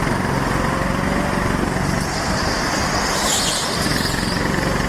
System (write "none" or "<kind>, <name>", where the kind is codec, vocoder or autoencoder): none